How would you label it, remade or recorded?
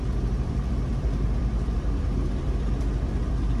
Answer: remade